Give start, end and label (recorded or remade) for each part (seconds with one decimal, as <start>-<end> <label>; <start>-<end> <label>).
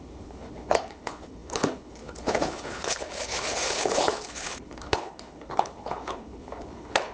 0.0-7.1 remade